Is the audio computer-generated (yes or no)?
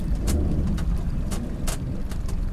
yes